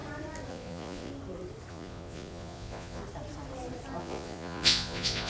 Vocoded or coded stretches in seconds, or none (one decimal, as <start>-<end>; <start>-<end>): 0.5-1.1; 1.7-3.0; 4.0-5.3